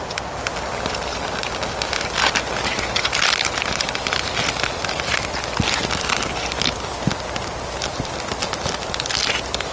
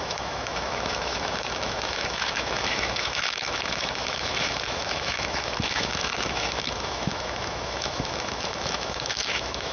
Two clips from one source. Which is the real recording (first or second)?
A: first